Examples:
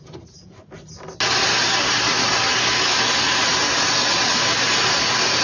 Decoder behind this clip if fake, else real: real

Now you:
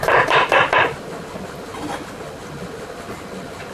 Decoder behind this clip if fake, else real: real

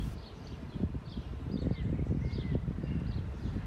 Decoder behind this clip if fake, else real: real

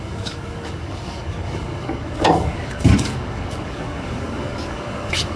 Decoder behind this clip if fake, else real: fake, codec, DAC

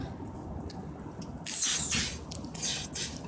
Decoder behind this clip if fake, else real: real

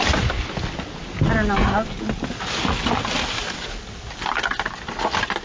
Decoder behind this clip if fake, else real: real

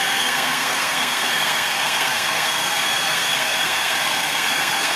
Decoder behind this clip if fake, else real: fake, codec, SNAC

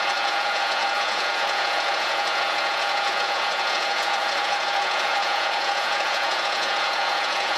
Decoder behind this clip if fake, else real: fake, vocoder, Vocos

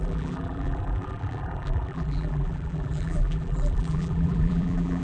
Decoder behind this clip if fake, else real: fake, vocoder, BigVGAN v2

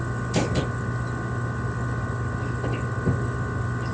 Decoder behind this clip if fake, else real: real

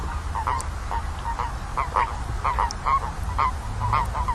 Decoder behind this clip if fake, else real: real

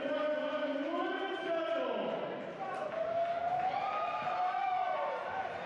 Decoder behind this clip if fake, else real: real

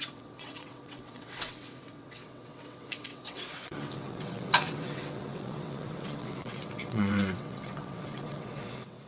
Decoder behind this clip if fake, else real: fake, vocoder, WaveNeXt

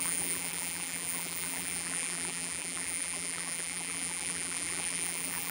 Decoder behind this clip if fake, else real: fake, vocoder, BigVGAN v2